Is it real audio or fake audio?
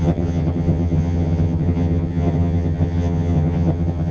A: fake